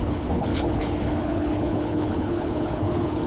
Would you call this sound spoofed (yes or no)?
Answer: yes